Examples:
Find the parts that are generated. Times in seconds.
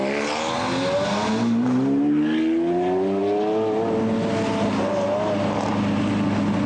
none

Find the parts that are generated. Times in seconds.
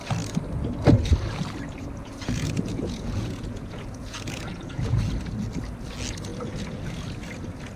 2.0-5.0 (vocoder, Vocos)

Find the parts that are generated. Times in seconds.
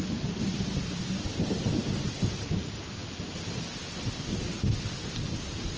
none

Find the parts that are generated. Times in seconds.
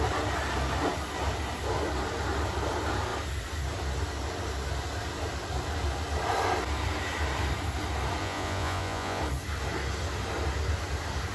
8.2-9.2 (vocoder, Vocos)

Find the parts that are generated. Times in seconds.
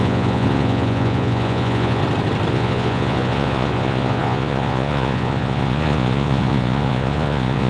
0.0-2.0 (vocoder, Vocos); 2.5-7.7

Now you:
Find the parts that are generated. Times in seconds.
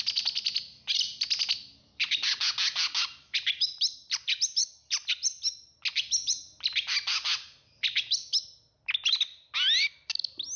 none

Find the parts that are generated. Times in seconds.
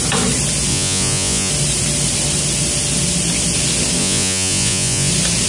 0.7-1.5 (vocoder, Vocos); 4.0-5.1